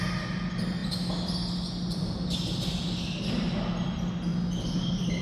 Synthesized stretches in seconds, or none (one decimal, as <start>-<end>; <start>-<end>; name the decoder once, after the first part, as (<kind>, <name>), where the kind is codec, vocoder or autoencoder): none